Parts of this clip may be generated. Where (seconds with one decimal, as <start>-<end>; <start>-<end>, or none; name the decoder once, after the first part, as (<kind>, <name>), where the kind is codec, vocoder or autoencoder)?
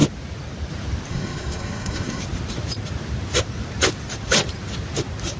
1.1-2.2 (codec, SNAC)